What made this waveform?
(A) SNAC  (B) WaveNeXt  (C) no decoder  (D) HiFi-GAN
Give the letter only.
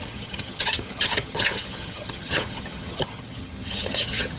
D